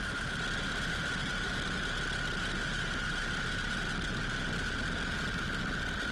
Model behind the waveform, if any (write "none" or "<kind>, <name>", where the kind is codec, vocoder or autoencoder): none